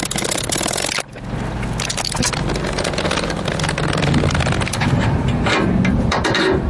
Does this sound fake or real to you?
real